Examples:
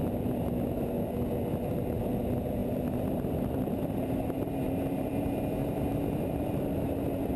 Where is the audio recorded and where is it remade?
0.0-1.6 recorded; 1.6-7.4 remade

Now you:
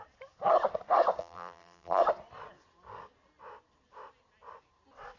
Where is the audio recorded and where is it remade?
0.0-1.2 recorded; 1.2-2.0 remade; 2.0-5.2 recorded

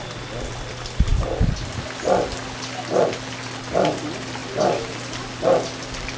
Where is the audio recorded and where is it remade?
0.0-6.2 recorded

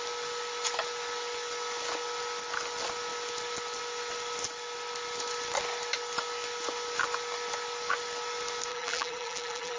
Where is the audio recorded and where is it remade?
0.0-8.7 recorded; 8.7-9.8 remade

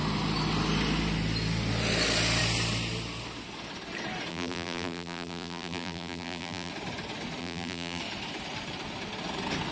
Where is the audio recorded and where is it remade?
0.0-4.3 recorded; 4.3-6.7 remade; 6.7-7.4 recorded; 7.4-8.0 remade; 8.0-9.7 recorded

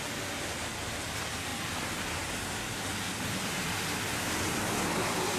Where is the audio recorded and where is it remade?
0.0-5.4 recorded